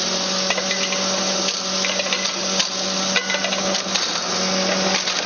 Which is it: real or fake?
real